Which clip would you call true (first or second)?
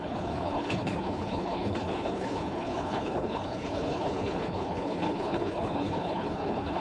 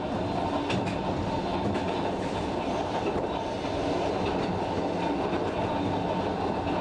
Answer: second